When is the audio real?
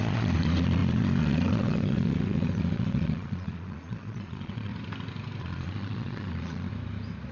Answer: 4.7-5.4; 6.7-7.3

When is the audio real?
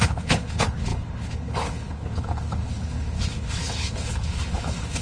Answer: none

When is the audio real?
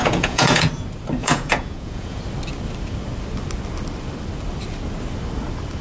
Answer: 0.7-1.2; 2.2-5.8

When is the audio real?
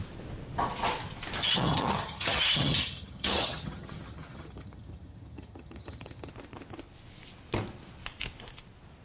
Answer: 0.0-1.4; 6.3-9.0